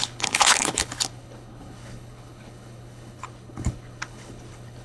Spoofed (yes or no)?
yes